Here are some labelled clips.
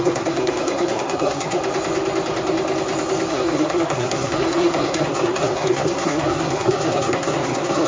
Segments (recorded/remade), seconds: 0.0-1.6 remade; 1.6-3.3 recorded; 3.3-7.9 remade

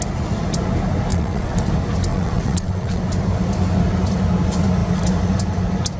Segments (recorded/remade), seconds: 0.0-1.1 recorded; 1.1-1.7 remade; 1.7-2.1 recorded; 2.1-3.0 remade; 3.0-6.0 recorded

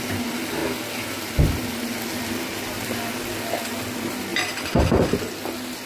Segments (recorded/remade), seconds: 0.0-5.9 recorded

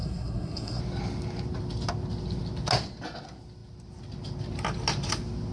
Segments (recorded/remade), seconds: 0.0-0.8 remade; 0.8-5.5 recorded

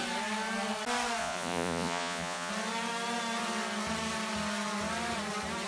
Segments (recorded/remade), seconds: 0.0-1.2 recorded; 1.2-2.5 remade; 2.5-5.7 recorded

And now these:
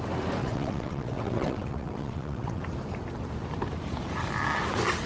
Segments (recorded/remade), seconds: 0.0-0.4 recorded; 0.4-2.6 remade; 2.6-5.1 recorded

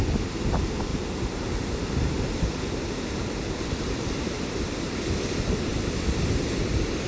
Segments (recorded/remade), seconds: 0.0-0.9 recorded; 0.9-5.0 remade; 5.0-7.1 recorded

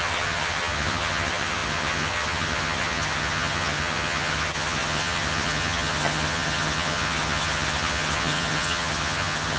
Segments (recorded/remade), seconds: 0.0-9.6 remade